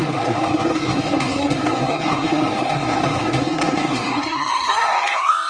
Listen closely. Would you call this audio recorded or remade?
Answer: remade